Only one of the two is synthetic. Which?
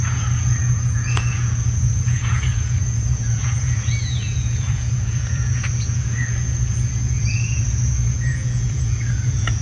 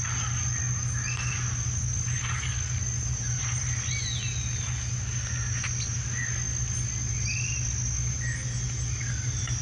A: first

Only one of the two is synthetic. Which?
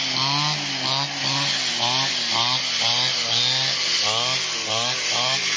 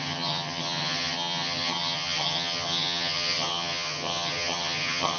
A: second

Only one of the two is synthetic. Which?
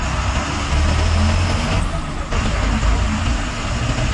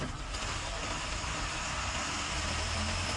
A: second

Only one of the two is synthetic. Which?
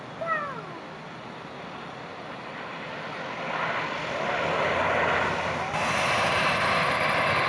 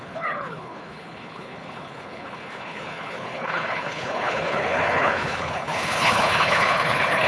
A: second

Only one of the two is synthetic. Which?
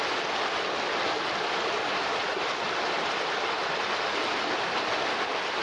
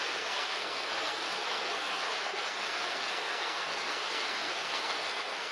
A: second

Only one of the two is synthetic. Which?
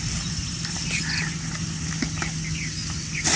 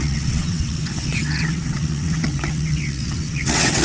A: second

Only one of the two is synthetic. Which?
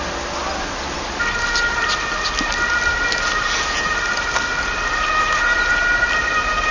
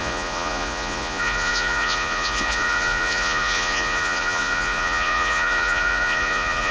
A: second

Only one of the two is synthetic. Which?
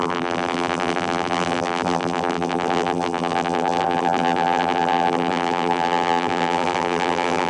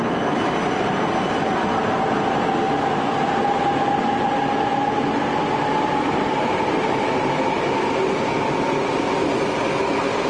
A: first